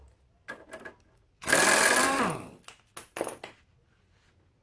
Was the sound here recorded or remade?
recorded